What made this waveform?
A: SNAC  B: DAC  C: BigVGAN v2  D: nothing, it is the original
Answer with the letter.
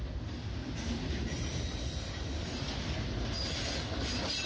D